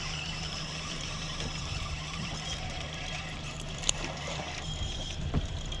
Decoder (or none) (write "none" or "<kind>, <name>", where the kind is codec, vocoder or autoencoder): vocoder, BigVGAN v2